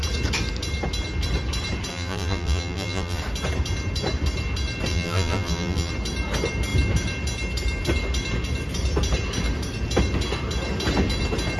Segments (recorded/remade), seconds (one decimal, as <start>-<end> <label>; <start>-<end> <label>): 0.0-1.9 recorded; 1.9-3.2 remade; 3.2-4.9 recorded; 4.9-5.9 remade; 5.9-11.6 recorded